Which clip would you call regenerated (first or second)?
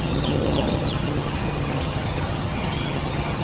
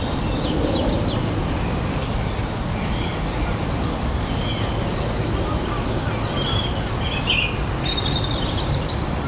first